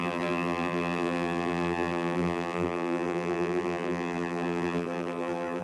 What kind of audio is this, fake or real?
fake